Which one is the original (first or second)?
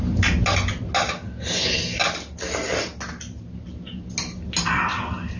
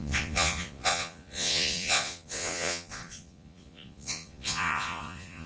first